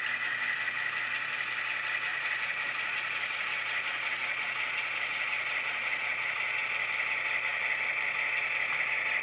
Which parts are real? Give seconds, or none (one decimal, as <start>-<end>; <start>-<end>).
0.0-2.1; 6.6-9.2